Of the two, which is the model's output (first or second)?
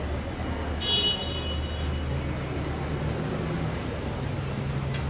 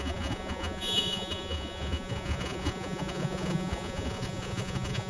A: second